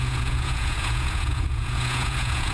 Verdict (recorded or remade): remade